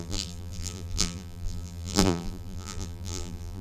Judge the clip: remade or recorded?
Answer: remade